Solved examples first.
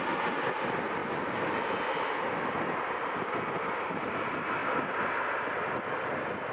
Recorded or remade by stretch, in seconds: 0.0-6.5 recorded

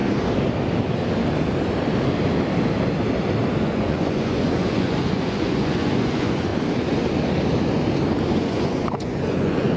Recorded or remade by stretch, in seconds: 0.0-3.6 recorded; 3.6-6.5 remade; 6.5-8.3 recorded; 8.3-9.8 remade

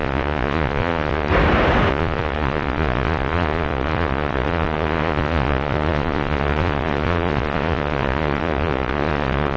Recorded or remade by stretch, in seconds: 0.0-1.3 remade; 1.3-1.9 recorded; 1.9-9.6 remade

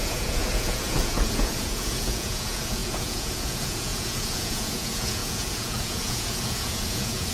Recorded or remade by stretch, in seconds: 0.0-7.3 remade